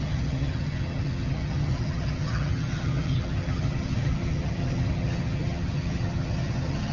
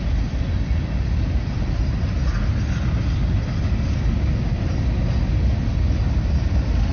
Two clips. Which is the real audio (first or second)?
second